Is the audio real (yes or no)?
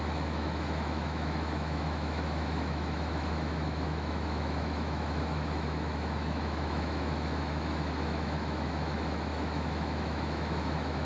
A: no